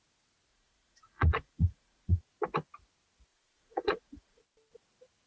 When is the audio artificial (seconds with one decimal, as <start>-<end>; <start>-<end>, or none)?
0.5-2.2; 3.3-4.4